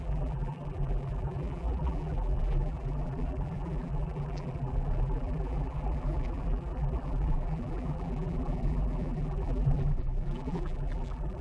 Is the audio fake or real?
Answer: fake